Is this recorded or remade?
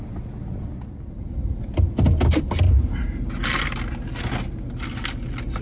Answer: recorded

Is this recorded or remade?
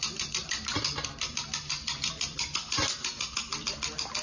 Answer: recorded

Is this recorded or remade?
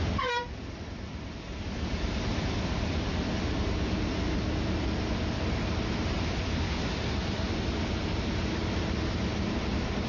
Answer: recorded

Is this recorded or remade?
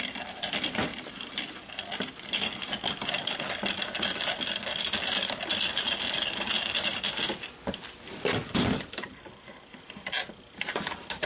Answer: recorded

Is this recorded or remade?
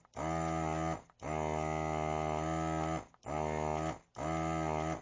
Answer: recorded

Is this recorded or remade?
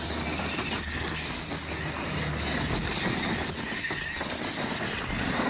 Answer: recorded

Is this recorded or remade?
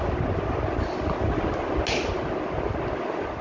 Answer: recorded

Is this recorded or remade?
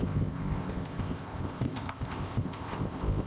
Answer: remade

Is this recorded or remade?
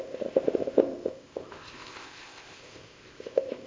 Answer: remade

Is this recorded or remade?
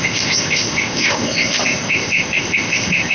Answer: remade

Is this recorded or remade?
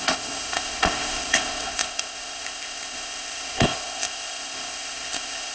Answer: remade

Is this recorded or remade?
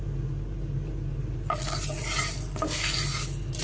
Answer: recorded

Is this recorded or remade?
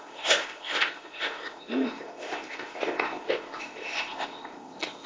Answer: remade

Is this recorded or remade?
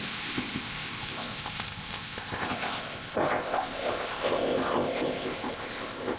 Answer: remade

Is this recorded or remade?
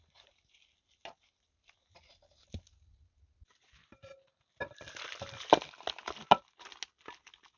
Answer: recorded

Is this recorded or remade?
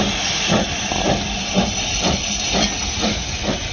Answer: recorded